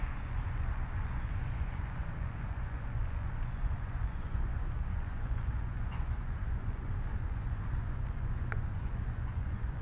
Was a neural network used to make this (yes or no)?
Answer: yes